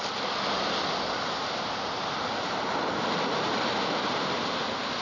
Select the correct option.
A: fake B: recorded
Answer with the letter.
B